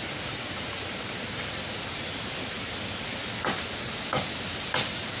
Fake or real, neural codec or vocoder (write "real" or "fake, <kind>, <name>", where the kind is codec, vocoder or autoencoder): real